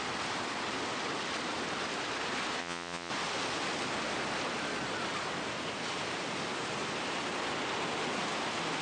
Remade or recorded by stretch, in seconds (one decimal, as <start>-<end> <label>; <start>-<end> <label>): 0.0-2.6 recorded; 2.6-3.1 remade; 3.1-8.8 recorded